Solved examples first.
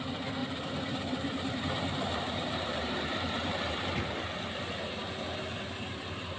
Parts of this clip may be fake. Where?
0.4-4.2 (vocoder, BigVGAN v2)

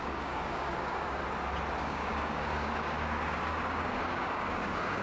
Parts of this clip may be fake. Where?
0.0-1.2 (codec, DAC); 1.8-5.0